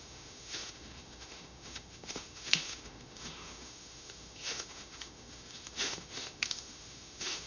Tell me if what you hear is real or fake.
fake